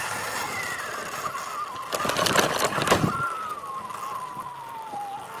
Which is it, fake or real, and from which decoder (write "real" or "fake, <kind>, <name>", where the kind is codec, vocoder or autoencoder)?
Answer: real